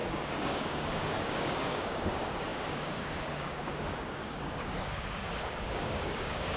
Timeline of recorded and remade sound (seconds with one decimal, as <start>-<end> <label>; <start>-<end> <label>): 0.0-6.6 remade